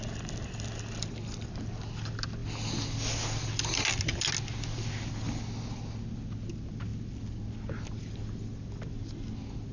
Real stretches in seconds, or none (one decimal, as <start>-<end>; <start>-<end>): 0.0-9.7